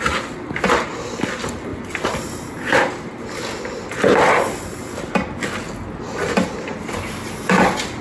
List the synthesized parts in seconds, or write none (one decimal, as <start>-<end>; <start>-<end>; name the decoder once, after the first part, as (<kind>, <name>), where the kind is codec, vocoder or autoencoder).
none